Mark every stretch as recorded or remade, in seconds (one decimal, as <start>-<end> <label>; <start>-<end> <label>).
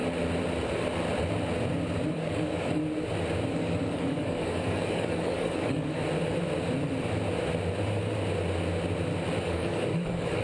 0.0-2.1 recorded; 2.1-2.8 remade; 2.8-3.5 recorded; 3.5-6.0 remade; 6.0-9.4 recorded; 9.4-10.4 remade